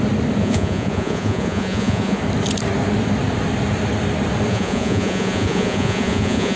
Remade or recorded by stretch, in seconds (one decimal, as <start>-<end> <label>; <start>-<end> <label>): 0.0-0.4 recorded; 0.4-2.2 remade; 2.2-4.5 recorded; 4.5-6.6 remade

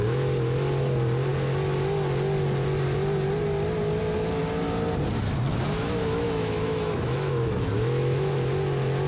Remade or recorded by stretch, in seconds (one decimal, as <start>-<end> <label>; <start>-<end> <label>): 0.0-6.0 recorded; 6.0-8.3 remade; 8.3-9.1 recorded

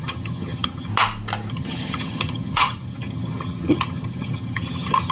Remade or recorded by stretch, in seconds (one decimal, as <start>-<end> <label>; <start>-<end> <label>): 0.0-0.9 remade; 0.9-1.5 recorded; 1.5-5.1 remade

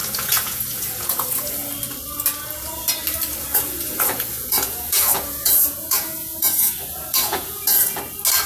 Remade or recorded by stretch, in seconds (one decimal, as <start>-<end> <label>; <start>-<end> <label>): 0.0-1.5 remade; 1.5-3.5 recorded; 3.5-8.0 remade; 8.0-8.5 recorded